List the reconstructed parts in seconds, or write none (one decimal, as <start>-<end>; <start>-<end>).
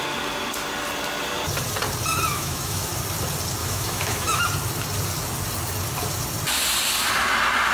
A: 2.3-2.9; 3.6-4.4